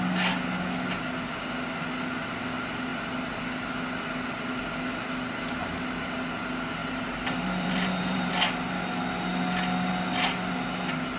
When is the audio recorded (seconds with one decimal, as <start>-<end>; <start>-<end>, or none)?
0.0-6.8; 8.3-11.2